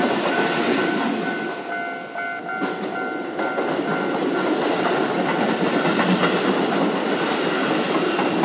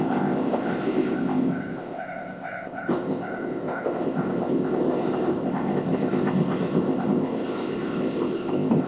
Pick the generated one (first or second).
second